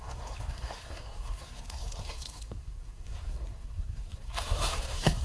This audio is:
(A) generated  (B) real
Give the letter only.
A